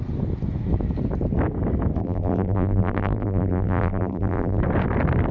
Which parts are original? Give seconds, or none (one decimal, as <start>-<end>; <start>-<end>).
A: 0.0-2.0; 4.6-5.3